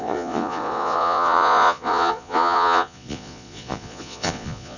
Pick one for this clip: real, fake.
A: fake